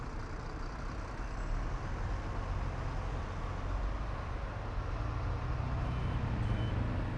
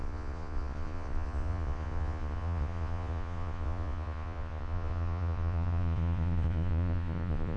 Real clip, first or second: first